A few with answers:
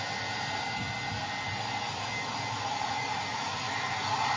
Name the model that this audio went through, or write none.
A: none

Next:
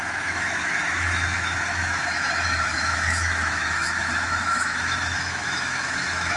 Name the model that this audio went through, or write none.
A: autoencoder, DAC-VAE